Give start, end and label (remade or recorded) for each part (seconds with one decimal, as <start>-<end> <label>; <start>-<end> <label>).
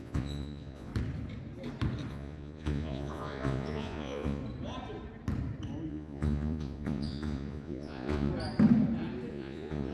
0.0-0.9 remade; 0.9-2.1 recorded; 2.1-4.4 remade; 4.4-5.9 recorded; 5.9-8.3 remade; 8.3-9.3 recorded; 9.3-9.9 remade